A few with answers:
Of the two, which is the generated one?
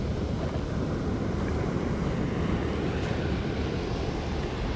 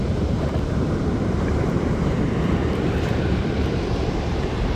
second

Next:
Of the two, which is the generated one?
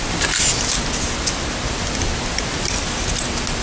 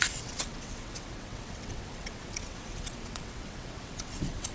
second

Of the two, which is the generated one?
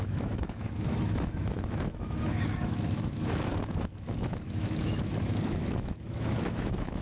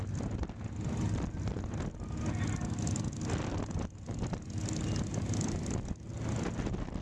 first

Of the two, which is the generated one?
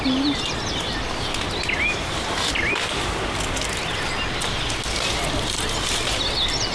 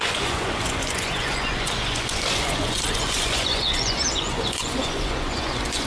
second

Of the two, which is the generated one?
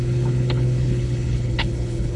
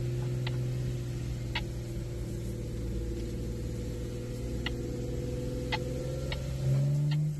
first